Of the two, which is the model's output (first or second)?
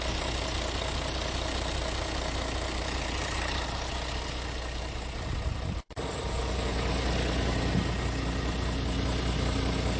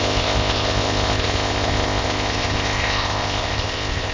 second